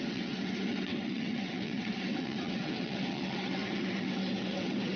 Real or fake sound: fake